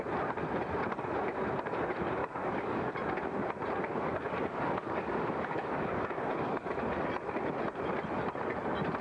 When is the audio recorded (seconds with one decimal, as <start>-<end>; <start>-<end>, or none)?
0.0-2.2; 2.9-3.9; 6.8-9.0